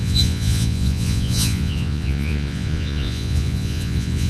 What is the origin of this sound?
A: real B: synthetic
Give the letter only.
B